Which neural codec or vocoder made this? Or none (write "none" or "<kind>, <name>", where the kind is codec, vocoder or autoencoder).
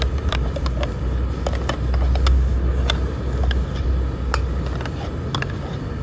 none